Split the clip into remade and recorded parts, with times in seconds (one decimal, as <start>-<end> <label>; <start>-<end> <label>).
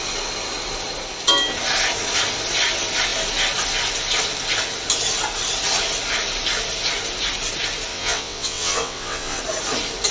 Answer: 0.0-7.9 recorded; 7.9-9.4 remade; 9.4-10.1 recorded